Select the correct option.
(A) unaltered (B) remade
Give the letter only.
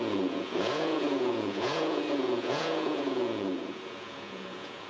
B